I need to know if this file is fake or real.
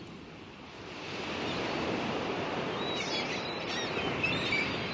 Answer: real